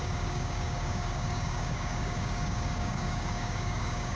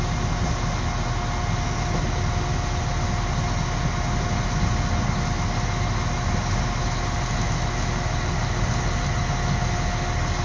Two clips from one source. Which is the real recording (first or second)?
second